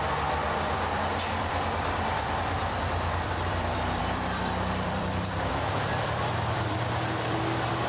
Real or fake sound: fake